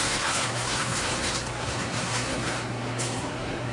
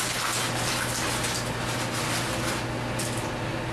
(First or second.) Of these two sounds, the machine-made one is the first